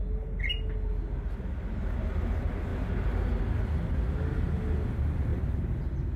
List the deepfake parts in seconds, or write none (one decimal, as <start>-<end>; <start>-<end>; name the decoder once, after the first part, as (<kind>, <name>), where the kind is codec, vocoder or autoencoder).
none